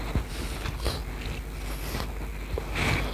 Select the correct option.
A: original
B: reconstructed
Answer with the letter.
A